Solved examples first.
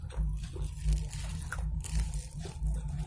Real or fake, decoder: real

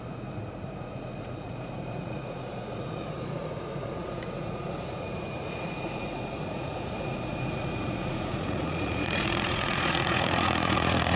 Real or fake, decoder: fake, vocoder, Vocos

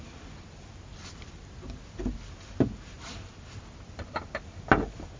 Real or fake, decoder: real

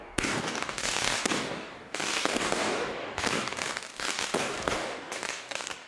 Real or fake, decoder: fake, codec, DAC